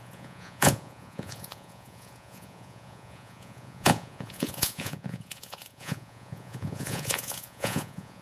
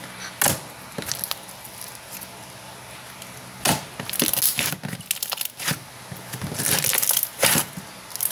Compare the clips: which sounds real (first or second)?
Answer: second